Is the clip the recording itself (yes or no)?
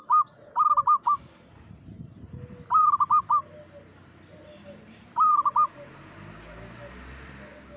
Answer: yes